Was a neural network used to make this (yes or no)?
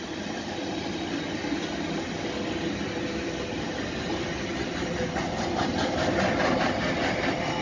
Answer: no